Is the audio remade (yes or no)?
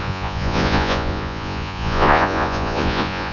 yes